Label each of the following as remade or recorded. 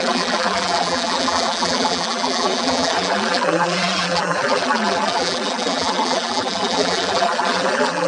remade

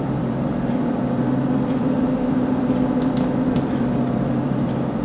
remade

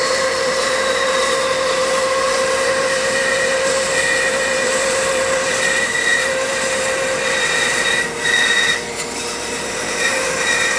remade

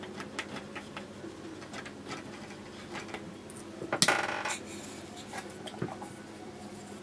recorded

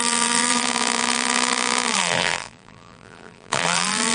remade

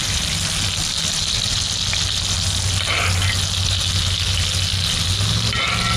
recorded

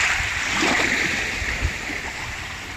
remade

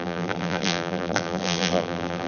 remade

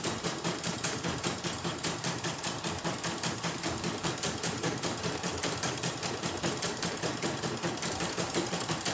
remade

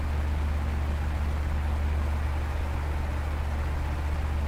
recorded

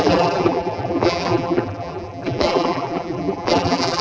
remade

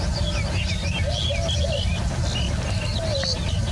recorded